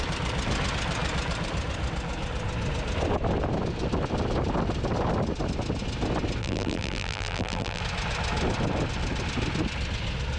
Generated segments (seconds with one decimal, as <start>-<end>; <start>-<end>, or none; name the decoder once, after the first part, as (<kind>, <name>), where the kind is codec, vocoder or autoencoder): 6.4-7.8 (vocoder, BigVGAN v2)